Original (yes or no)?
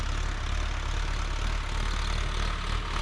yes